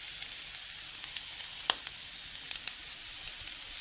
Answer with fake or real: real